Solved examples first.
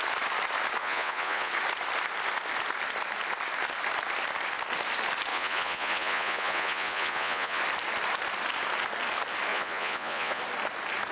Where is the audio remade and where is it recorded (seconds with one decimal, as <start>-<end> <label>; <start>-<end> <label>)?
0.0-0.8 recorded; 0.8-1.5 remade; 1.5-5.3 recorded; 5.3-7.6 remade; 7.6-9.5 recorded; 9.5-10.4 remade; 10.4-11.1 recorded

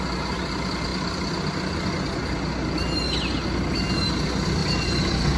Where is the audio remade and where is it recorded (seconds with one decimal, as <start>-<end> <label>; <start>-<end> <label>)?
0.0-4.6 recorded; 4.6-5.4 remade

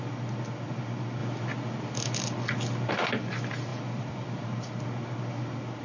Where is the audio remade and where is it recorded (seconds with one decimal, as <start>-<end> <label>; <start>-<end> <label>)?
0.0-3.7 recorded; 3.7-4.8 remade; 4.8-5.8 recorded